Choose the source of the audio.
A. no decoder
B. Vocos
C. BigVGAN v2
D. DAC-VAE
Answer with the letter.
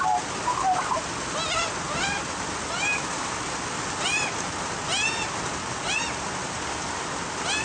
A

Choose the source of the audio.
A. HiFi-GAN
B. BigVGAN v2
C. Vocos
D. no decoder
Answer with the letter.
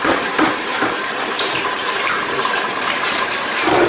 B